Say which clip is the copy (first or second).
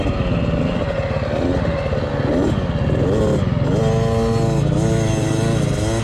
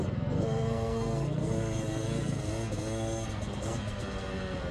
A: second